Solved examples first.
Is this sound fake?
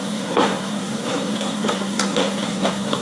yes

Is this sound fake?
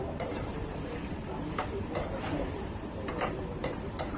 yes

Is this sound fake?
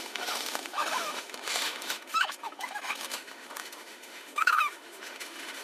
yes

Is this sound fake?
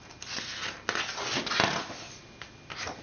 no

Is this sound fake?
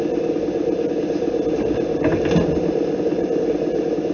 no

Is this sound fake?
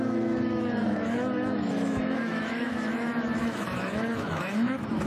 yes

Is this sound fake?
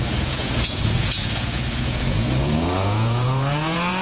yes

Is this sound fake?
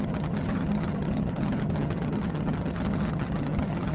yes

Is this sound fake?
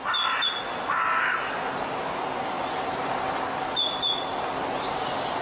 no